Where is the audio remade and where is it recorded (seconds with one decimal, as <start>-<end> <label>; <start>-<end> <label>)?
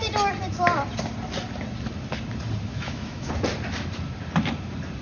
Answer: 0.0-2.7 recorded; 2.7-3.3 remade; 3.3-5.0 recorded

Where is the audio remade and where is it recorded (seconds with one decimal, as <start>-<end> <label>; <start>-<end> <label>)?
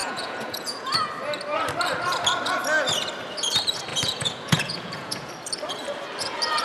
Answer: 0.0-1.1 remade; 1.1-3.9 recorded; 3.9-5.3 remade; 5.3-6.6 recorded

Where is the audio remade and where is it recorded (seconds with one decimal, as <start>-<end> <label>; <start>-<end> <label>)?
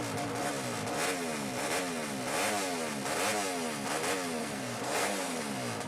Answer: 0.0-4.4 recorded; 4.4-5.4 remade; 5.4-5.9 recorded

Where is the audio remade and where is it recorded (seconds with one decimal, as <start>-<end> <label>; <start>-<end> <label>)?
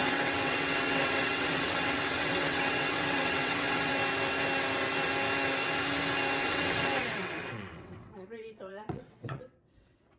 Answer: 0.0-4.0 remade; 4.0-6.4 recorded; 6.4-10.2 remade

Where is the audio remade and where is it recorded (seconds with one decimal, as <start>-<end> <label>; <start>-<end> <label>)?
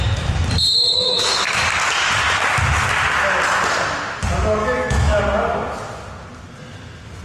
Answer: 0.0-0.8 recorded; 0.8-1.6 remade; 1.6-4.6 recorded; 4.6-5.2 remade; 5.2-7.2 recorded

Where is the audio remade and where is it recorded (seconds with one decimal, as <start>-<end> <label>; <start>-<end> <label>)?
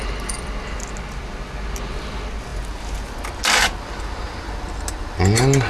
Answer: 0.0-5.7 recorded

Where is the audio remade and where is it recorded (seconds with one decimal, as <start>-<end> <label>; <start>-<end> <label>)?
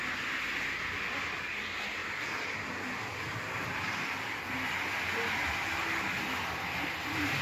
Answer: 0.0-7.4 recorded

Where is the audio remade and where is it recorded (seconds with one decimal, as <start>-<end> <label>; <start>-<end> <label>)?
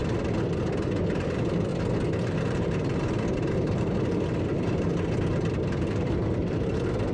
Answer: 0.0-1.1 recorded; 1.1-1.7 remade; 1.7-2.2 recorded; 2.2-4.9 remade; 4.9-5.6 recorded; 5.6-7.1 remade